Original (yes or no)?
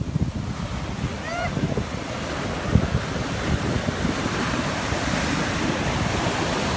yes